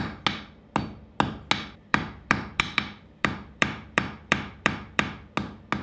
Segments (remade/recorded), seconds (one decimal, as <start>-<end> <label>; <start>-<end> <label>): 0.0-1.9 recorded; 1.9-5.3 remade; 5.3-5.8 recorded